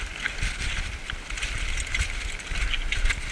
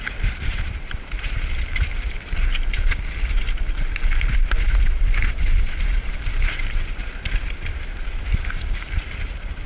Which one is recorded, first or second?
first